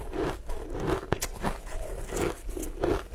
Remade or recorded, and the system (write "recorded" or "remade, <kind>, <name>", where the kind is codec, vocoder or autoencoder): recorded